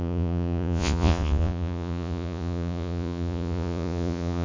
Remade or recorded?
remade